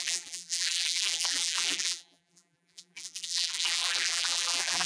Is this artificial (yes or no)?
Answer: yes